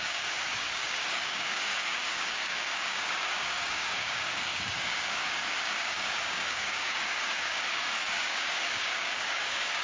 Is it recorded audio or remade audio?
remade